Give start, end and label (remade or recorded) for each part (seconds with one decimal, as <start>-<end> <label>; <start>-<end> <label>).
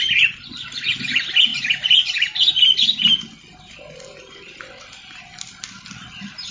0.0-6.5 recorded